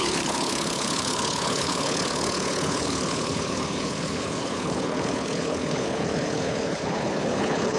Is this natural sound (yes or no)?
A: no